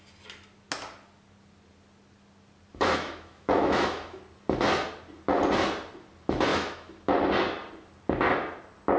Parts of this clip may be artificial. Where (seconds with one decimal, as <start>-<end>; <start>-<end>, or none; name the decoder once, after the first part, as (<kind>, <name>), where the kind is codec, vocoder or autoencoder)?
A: 2.7-4.2 (autoencoder, DAC-VAE); 6.5-7.0